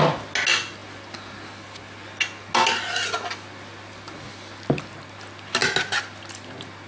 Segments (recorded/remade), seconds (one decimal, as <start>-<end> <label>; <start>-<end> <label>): 0.0-6.9 recorded